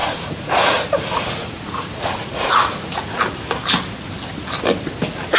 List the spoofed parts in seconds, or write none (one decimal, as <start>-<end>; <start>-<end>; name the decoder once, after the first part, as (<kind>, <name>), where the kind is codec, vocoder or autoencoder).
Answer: 0.0-3.2 (vocoder, Vocos)